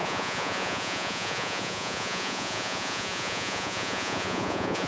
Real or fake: fake